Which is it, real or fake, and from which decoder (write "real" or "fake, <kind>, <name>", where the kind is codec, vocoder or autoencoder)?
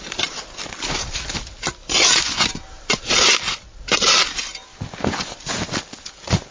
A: fake, vocoder, BigVGAN v2